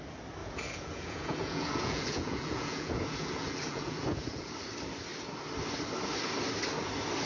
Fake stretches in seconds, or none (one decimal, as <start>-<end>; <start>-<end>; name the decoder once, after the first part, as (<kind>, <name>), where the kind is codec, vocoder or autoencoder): 0.4-4.5 (vocoder, Vocos)